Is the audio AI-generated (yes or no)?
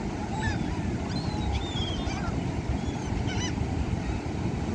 no